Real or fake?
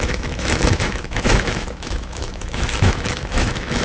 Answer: fake